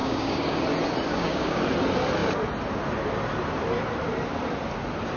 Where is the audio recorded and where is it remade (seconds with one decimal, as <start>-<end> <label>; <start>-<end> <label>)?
0.0-0.6 remade; 0.6-1.1 recorded; 1.1-1.6 remade; 1.6-5.2 recorded